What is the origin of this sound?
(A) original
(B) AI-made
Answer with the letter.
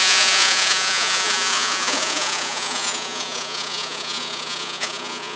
B